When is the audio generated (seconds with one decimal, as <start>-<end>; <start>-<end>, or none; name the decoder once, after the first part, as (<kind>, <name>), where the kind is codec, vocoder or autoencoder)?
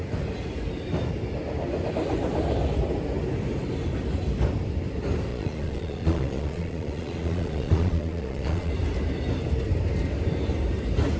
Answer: 5.3-8.7 (vocoder, Vocos)